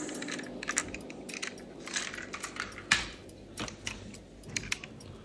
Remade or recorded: remade